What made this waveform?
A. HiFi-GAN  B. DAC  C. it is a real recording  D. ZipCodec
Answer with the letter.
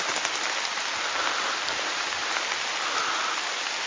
C